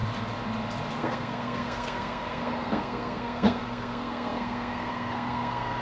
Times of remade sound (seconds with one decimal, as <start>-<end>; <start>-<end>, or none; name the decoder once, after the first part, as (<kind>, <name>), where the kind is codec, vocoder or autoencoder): 0.9-5.8 (codec, SNAC)